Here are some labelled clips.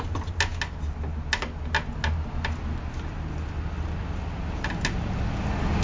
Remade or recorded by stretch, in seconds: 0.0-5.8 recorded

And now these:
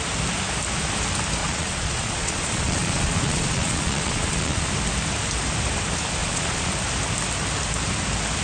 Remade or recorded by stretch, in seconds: 0.0-1.4 recorded; 1.4-4.7 remade; 4.7-6.2 recorded; 6.2-6.7 remade; 6.7-8.4 recorded

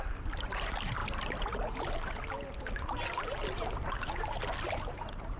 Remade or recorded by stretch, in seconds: 0.0-5.4 recorded

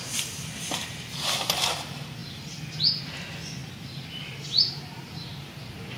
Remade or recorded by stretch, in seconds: 0.0-6.0 recorded

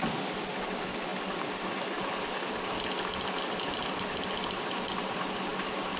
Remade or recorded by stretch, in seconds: 0.0-6.0 recorded

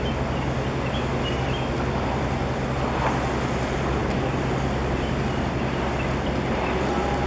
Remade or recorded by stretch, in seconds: 0.0-7.3 recorded

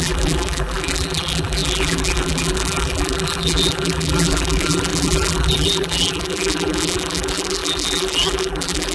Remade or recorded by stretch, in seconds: 0.0-8.9 remade

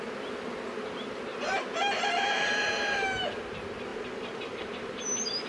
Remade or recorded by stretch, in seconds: 0.0-1.3 recorded; 1.3-1.8 remade; 1.8-3.9 recorded; 3.9-5.0 remade; 5.0-5.5 recorded